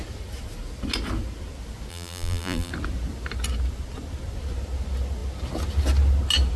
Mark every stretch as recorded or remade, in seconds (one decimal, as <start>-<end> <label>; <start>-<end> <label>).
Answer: 0.0-1.9 recorded; 1.9-2.7 remade; 2.7-6.6 recorded